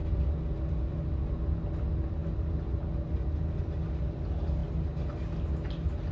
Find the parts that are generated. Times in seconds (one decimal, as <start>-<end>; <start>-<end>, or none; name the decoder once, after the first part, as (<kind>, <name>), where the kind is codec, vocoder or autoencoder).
none